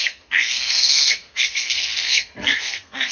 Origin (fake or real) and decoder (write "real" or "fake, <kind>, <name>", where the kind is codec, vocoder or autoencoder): fake, codec, SNAC